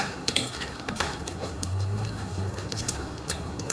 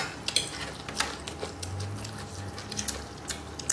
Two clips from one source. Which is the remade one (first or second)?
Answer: first